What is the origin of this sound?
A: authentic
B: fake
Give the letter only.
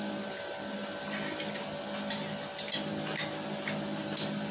A